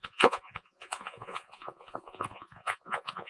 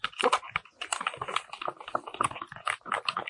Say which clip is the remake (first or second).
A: first